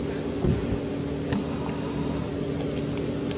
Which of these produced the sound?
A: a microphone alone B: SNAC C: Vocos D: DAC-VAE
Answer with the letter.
A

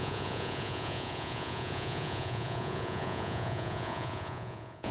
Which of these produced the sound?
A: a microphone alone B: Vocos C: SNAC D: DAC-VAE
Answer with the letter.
B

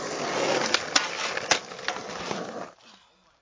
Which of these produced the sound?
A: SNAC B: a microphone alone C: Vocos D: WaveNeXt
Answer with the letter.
B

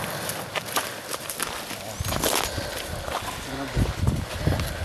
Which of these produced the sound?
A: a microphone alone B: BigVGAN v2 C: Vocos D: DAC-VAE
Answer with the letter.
A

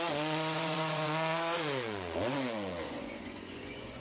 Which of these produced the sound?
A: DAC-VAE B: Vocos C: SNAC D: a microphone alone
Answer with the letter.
B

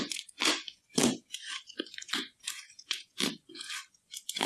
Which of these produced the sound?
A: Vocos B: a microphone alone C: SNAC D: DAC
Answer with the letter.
A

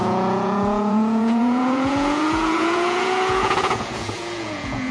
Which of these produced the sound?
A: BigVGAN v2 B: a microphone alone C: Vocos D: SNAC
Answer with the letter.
C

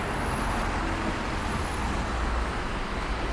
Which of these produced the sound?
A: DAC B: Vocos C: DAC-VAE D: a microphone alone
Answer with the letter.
D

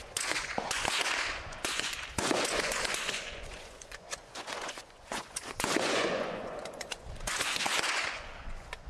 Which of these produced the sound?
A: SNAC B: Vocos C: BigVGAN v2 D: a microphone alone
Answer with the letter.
B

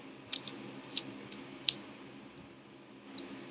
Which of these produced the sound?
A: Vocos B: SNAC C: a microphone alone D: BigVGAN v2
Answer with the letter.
C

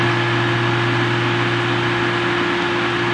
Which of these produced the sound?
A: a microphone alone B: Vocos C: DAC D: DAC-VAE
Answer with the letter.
A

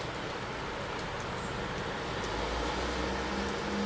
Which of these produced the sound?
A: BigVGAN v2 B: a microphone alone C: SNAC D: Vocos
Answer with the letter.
B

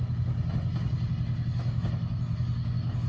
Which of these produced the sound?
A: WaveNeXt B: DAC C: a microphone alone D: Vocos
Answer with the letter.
C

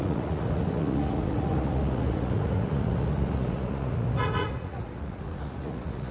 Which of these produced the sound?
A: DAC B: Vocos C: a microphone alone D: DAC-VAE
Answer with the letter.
B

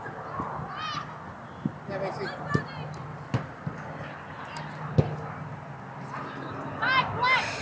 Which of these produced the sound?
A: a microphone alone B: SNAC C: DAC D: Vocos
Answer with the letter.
A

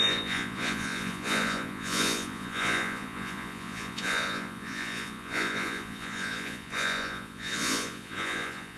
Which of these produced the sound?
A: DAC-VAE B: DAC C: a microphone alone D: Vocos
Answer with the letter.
D